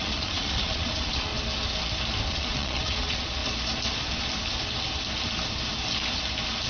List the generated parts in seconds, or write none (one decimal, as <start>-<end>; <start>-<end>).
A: 0.0-1.3; 2.3-3.4